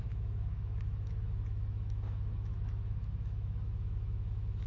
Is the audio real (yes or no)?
no